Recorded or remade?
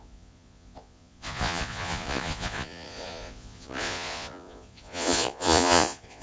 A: remade